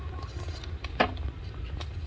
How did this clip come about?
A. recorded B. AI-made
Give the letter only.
A